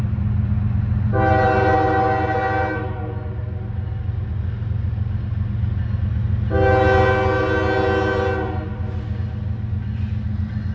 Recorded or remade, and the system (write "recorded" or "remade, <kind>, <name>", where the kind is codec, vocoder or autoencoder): recorded